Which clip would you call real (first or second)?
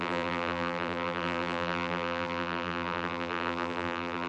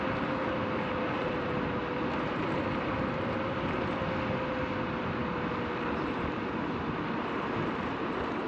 second